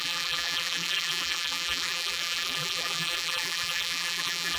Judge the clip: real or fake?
fake